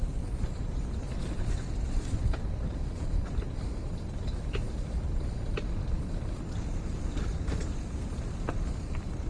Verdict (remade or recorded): recorded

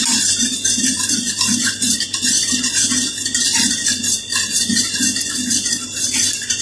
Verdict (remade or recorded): remade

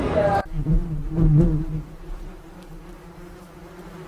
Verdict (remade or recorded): remade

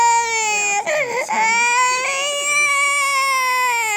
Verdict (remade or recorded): recorded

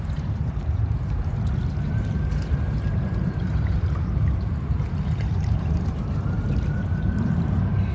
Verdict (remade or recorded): remade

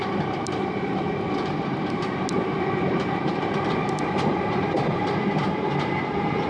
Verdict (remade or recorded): remade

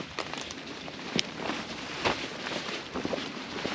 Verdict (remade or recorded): remade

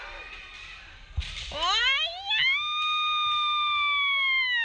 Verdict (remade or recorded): recorded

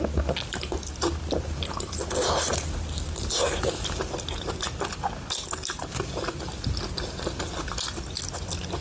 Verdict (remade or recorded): recorded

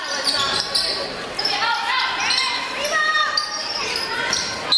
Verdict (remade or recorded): remade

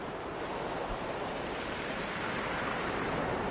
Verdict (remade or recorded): remade